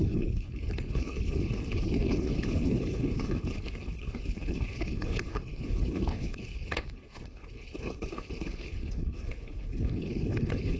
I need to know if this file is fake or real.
fake